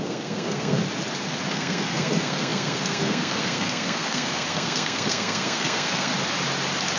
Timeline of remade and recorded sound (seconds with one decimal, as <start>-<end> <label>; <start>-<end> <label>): 0.0-0.8 remade; 0.8-1.5 recorded; 1.5-6.1 remade; 6.1-7.0 recorded